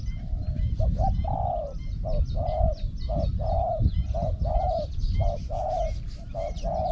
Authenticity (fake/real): fake